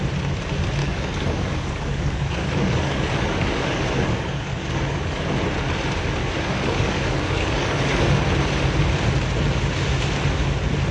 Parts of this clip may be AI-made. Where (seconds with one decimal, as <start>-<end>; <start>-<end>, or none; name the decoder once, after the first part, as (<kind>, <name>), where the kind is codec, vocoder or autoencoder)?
0.8-5.3 (codec, DAC); 6.2-8.1